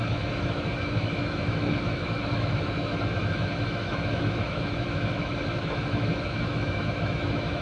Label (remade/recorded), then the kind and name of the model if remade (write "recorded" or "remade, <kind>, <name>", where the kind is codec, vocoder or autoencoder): remade, autoencoder, DAC-VAE